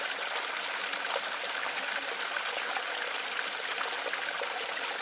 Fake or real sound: real